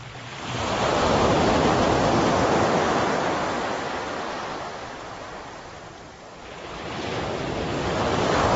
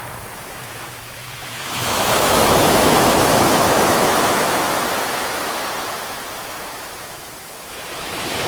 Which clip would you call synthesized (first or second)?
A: second